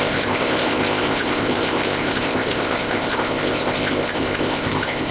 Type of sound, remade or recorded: remade